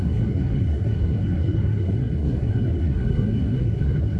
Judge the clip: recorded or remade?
remade